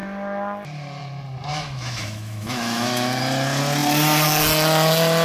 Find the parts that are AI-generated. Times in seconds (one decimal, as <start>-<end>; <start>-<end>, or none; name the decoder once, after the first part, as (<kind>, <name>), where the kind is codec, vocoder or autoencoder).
1.5-3.2 (autoencoder, DAC-VAE)